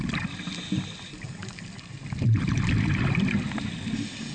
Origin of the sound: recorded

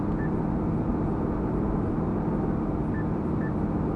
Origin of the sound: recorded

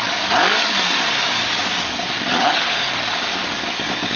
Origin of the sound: remade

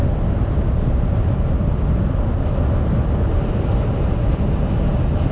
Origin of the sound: recorded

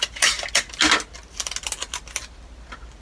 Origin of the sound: recorded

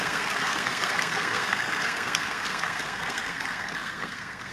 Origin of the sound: remade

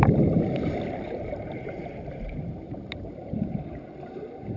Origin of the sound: remade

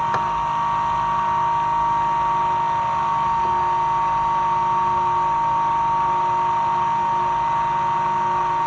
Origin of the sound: recorded